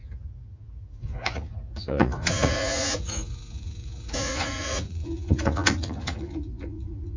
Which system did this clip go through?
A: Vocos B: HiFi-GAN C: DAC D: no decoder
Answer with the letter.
A